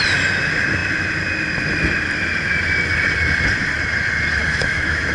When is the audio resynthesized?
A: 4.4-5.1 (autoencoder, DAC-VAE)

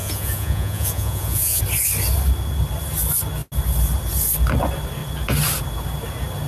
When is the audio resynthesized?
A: 0.0-1.6 (vocoder, Vocos)

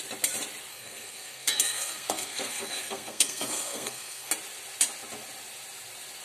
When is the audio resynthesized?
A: 0.7-4.3 (codec, SNAC)